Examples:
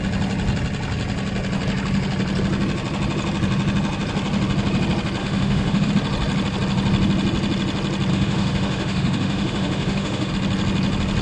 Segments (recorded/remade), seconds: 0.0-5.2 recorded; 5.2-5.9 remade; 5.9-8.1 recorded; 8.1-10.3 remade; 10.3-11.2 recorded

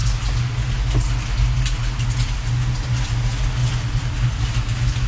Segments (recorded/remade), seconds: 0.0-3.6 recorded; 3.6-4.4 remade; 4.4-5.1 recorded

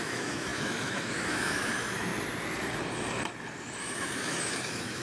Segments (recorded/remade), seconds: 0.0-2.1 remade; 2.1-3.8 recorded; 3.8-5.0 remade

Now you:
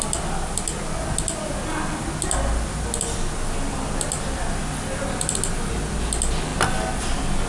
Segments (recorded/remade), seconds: 0.0-7.5 recorded

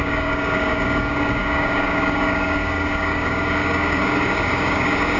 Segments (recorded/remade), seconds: 0.0-5.2 remade

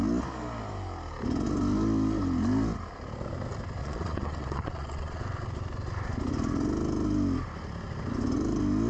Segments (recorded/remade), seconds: 0.0-3.8 recorded; 3.8-5.2 remade; 5.2-8.9 recorded

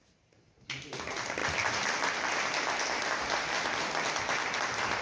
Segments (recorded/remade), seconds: 0.0-5.0 recorded

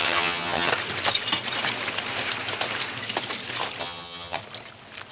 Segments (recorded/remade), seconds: 0.0-0.7 remade; 0.7-3.8 recorded; 3.8-4.4 remade; 4.4-5.1 recorded